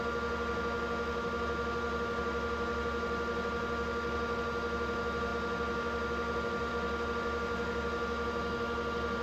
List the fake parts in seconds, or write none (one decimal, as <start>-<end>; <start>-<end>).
none